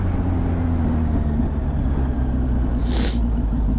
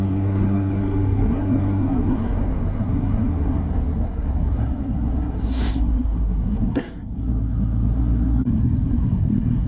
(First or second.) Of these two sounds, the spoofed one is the second